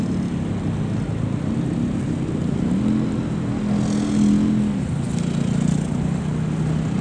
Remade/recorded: recorded